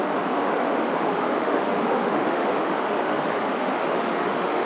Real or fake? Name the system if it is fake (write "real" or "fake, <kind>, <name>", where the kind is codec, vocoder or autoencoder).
fake, autoencoder, DAC-VAE